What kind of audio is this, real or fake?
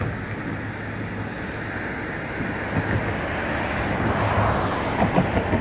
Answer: real